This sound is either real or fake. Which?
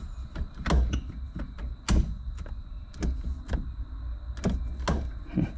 real